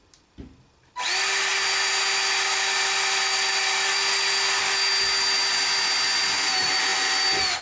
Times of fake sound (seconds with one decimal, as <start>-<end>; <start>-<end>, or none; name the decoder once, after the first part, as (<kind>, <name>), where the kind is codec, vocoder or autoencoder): none